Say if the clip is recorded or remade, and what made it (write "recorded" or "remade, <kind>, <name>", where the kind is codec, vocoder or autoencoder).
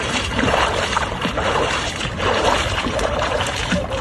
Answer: remade, vocoder, BigVGAN v2